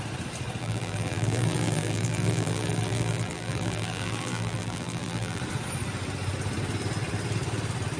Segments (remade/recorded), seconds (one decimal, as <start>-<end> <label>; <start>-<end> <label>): 0.0-0.6 recorded; 0.6-5.4 remade; 5.4-8.0 recorded